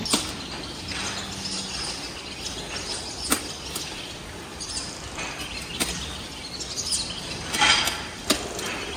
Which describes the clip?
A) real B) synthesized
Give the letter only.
A